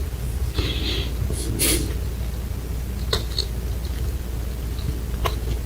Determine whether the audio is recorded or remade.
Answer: recorded